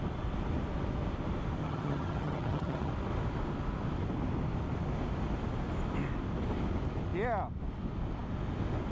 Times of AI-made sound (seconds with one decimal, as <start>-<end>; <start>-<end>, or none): 1.6-2.9